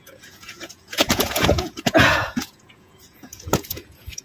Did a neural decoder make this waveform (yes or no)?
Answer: yes